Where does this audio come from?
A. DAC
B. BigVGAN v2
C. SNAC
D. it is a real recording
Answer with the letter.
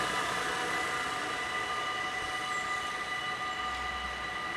D